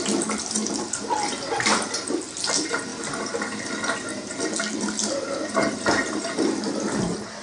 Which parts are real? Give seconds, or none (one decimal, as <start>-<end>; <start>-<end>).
0.0-7.4